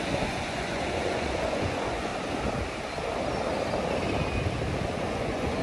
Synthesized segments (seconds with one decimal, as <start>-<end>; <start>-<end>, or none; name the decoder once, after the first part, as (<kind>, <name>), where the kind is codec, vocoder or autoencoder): 0.0-2.1 (vocoder, Vocos); 4.8-5.6